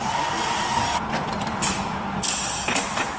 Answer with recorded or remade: recorded